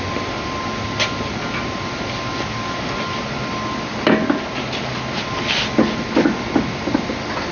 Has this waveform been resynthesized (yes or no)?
no